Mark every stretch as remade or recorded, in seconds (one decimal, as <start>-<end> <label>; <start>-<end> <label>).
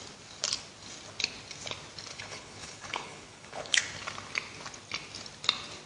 0.0-2.1 recorded; 2.1-3.8 remade; 3.8-5.9 recorded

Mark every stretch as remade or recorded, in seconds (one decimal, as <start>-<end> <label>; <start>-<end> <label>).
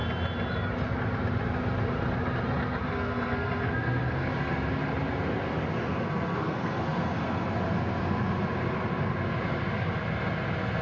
0.0-2.8 recorded; 2.8-4.3 remade; 4.3-5.9 recorded; 5.9-7.5 remade; 7.5-10.8 recorded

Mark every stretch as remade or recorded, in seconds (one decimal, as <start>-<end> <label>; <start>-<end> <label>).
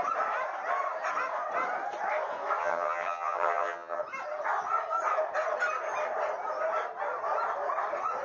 0.0-2.6 recorded; 2.6-4.0 remade; 4.0-8.2 recorded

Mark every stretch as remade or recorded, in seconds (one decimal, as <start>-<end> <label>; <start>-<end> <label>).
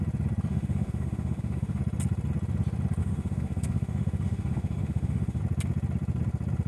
0.0-0.5 recorded; 0.5-1.8 remade; 1.8-3.0 recorded; 3.0-5.4 remade; 5.4-6.7 recorded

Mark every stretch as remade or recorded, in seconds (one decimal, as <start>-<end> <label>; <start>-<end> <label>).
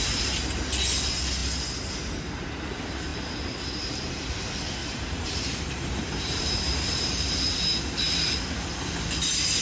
0.0-4.8 recorded; 4.8-7.1 remade; 7.1-9.6 recorded